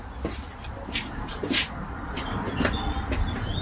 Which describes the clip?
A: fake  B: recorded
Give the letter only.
B